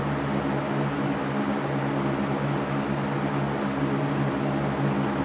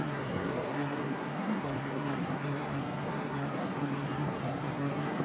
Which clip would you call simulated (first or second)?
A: second